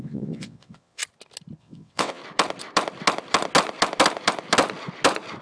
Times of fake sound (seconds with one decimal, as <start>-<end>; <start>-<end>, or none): 0.0-1.0; 1.6-2.2